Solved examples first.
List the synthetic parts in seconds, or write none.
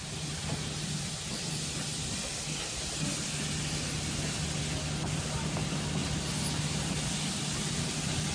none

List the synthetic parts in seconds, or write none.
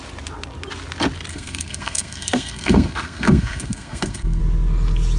1.3-4.4 (codec, SNAC)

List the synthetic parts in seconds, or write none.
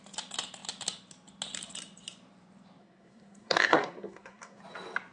2.8-4.6 (codec, SNAC)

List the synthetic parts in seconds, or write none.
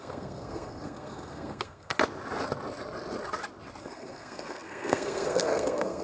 0.0-1.9 (codec, SNAC); 3.8-6.0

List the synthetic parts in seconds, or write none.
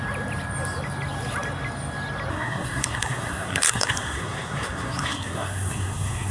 2.3-6.3 (codec, SNAC)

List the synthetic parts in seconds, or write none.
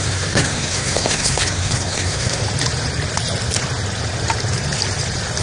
0.0-2.4 (codec, SNAC)